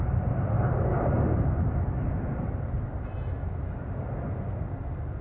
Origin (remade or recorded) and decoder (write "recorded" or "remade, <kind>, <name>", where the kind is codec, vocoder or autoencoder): recorded